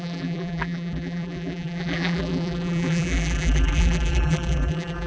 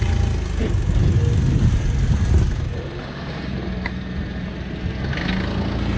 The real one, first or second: second